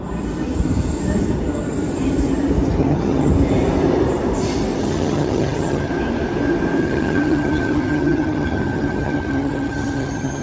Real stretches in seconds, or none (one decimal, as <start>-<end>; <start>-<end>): 0.0-2.8; 3.3-4.8; 5.9-6.8